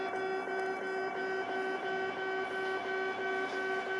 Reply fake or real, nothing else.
real